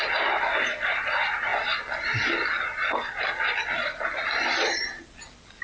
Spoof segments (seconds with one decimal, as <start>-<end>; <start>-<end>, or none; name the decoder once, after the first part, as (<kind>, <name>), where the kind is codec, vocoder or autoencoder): none